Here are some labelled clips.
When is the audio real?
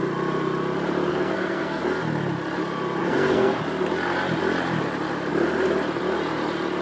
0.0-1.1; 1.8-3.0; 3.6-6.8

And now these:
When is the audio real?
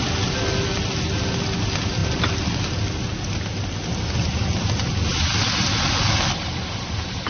0.0-7.3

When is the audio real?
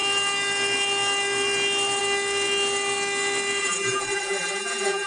0.0-3.6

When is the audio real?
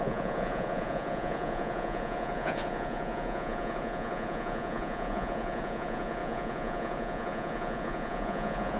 none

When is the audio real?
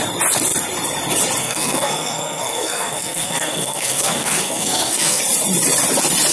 0.0-1.4; 5.2-6.3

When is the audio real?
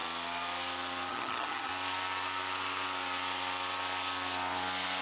0.0-1.1; 1.7-5.0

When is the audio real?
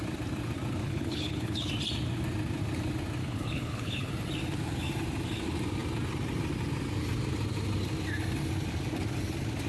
0.0-0.8; 1.7-3.2; 4.1-9.7